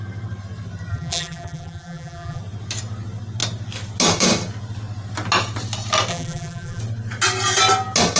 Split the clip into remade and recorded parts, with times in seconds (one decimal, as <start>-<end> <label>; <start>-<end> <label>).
0.0-0.9 recorded; 0.9-2.4 remade; 2.4-6.1 recorded; 6.1-6.8 remade; 6.8-8.2 recorded